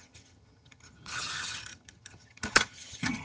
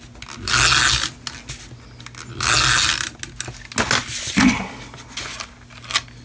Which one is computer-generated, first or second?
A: first